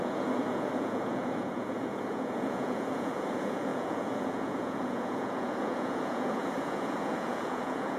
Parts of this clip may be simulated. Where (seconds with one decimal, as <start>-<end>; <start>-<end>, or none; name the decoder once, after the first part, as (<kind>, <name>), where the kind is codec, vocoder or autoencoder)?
0.0-8.0 (vocoder, Vocos)

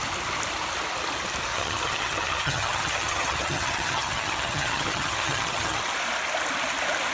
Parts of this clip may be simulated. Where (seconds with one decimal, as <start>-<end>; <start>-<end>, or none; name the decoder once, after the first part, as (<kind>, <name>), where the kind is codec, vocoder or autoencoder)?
1.5-5.8 (vocoder, HiFi-GAN)

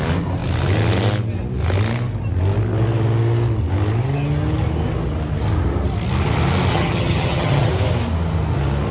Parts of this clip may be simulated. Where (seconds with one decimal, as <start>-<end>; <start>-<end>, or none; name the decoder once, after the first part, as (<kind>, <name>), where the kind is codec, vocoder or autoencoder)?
6.7-7.7 (vocoder, HiFi-GAN)

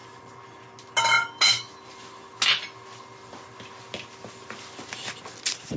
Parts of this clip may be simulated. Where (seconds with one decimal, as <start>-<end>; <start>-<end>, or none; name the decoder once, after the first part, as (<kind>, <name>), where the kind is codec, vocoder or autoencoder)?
none

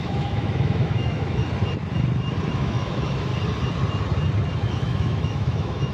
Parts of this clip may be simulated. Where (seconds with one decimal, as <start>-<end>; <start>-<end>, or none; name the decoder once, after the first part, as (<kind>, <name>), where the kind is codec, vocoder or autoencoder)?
0.0-1.4 (autoencoder, DAC-VAE); 2.5-3.3; 4.7-5.9

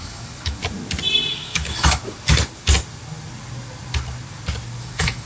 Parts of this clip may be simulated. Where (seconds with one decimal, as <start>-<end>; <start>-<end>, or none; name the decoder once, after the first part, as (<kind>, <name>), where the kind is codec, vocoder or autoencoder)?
0.0-0.6 (autoencoder, DAC-VAE); 1.3-2.0; 4.8-5.3